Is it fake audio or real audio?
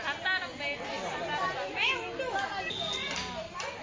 real